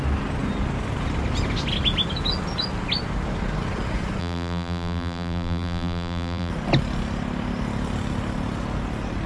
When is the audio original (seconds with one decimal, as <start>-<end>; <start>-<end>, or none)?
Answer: 0.0-4.2; 6.5-9.3

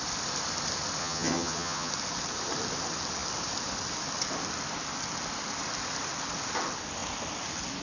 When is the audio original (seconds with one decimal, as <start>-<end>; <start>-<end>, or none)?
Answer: 0.0-1.0; 1.9-7.8

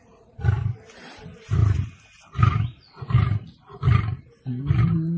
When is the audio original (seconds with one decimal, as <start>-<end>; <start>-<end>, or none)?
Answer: 1.6-4.7

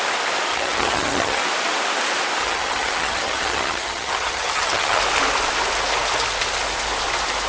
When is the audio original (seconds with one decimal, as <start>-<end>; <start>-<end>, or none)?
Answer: 0.0-0.5; 1.4-2.4; 5.0-7.5

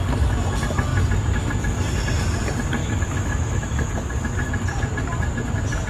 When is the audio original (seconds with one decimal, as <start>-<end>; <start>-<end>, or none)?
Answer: 0.0-2.8; 3.9-5.9

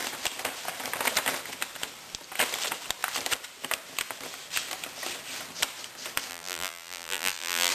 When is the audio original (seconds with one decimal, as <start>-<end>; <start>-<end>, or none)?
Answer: 0.0-6.3